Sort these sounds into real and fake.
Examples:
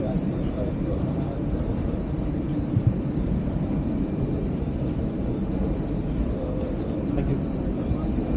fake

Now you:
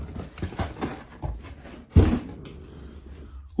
fake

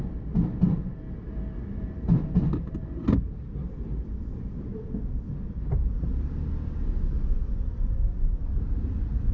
real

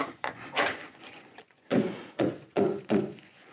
fake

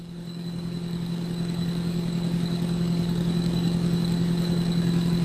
fake